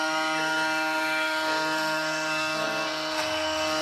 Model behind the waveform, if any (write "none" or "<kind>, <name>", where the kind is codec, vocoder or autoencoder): codec, SNAC